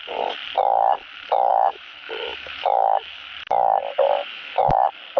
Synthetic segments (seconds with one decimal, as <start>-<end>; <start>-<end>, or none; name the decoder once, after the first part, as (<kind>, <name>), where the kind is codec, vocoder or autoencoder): 1.5-3.3 (autoencoder, DAC-VAE); 4.2-4.7